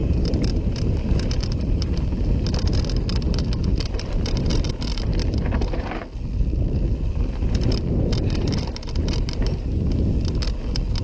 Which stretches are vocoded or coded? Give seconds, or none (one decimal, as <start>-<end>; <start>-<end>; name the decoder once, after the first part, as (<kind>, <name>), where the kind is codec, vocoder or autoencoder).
0.0-2.7 (vocoder, BigVGAN v2); 3.7-4.5; 5.2-7.9